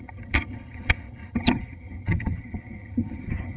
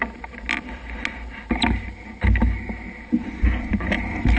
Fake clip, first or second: first